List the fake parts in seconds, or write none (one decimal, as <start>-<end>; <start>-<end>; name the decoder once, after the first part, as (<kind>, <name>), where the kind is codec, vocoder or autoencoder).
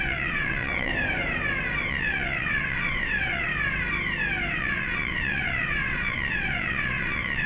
0.0-0.9 (vocoder, WaveNeXt); 1.9-3.5; 4.5-7.5